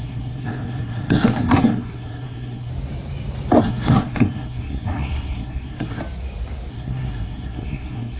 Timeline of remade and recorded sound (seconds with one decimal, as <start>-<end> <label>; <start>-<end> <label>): 0.0-2.7 remade; 2.7-3.6 recorded; 3.6-6.0 remade; 6.0-6.7 recorded; 6.7-8.2 remade